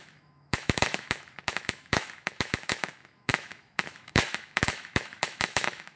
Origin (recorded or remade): remade